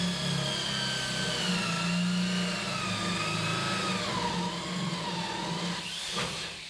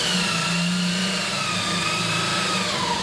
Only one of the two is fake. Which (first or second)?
second